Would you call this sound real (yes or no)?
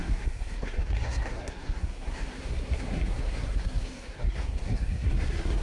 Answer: no